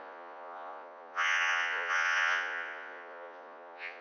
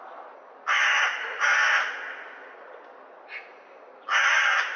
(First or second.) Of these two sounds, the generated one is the first